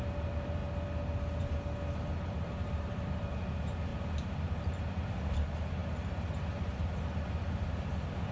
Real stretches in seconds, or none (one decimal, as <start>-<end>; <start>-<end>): 0.6-2.0